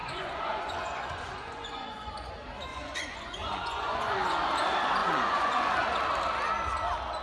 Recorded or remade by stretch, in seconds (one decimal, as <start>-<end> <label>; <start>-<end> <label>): 0.0-2.3 remade; 2.3-2.7 recorded; 2.7-4.5 remade; 4.5-5.0 recorded; 5.0-5.7 remade; 5.7-7.2 recorded